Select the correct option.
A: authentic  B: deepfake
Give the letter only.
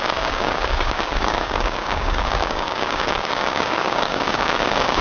B